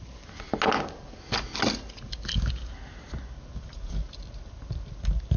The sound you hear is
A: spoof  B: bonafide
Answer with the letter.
B